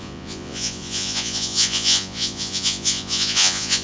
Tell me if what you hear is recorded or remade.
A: remade